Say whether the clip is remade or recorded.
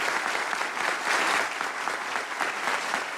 recorded